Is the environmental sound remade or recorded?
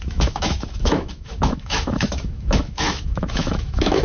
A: remade